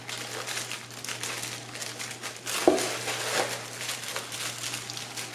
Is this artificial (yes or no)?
no